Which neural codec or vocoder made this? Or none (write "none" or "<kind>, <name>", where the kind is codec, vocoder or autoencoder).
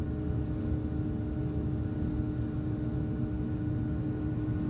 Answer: none